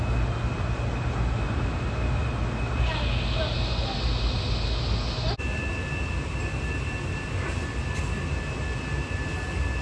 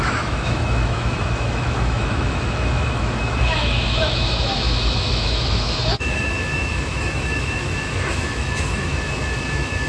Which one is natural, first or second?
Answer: first